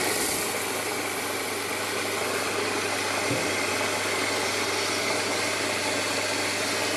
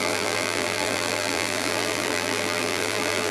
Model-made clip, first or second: second